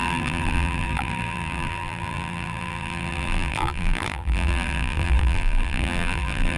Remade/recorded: remade